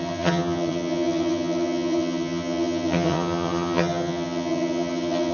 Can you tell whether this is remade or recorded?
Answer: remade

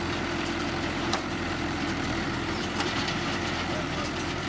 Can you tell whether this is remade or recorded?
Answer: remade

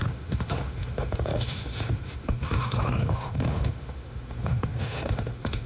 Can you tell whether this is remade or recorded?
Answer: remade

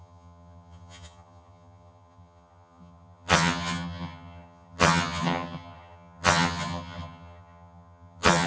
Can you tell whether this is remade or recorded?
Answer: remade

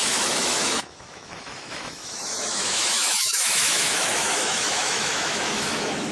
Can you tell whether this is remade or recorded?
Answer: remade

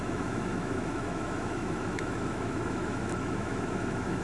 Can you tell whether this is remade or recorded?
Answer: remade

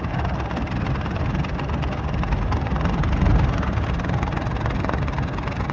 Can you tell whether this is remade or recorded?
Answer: recorded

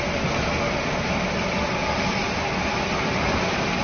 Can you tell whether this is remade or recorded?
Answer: recorded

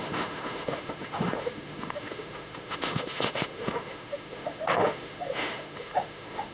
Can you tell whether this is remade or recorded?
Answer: remade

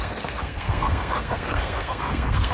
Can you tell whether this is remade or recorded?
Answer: remade